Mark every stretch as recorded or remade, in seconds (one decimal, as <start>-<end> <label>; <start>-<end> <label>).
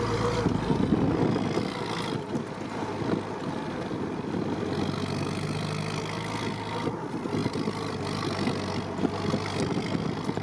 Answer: 0.0-10.4 recorded